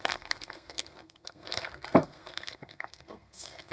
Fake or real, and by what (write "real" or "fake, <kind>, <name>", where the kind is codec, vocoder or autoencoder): fake, codec, SNAC